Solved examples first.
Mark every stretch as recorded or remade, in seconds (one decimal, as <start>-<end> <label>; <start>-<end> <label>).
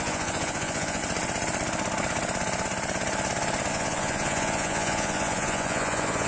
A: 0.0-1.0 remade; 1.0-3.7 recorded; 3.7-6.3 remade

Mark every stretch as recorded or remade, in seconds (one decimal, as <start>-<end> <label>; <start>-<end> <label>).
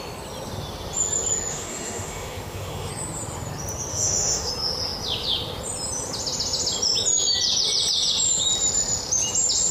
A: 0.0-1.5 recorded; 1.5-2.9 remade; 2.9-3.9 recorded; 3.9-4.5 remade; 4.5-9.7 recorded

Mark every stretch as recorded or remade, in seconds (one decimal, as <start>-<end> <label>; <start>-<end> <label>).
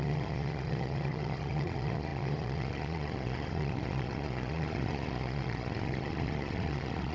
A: 0.0-7.1 remade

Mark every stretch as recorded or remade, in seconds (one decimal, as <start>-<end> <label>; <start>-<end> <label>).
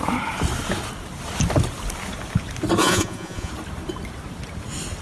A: 0.0-2.8 recorded; 2.8-3.5 remade; 3.5-5.0 recorded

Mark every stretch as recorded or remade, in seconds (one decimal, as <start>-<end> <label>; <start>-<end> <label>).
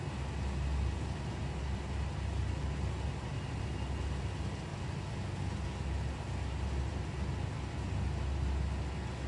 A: 0.0-9.3 recorded